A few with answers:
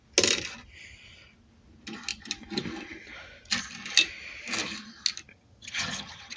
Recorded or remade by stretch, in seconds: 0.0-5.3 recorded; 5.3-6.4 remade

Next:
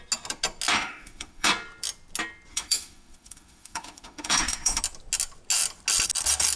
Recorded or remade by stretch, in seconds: 0.0-0.7 recorded; 0.7-1.5 remade; 1.5-2.5 recorded; 2.5-4.8 remade; 4.8-6.6 recorded

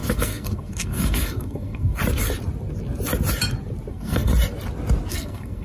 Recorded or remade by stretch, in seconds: 0.0-2.0 remade; 2.0-3.9 recorded; 3.9-4.3 remade; 4.3-5.1 recorded; 5.1-5.6 remade